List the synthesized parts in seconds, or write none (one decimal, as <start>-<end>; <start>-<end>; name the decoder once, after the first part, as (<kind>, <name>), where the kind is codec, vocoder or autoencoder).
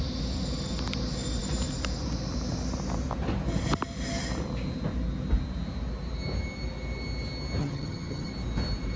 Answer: 7.6-8.3 (vocoder, HiFi-GAN)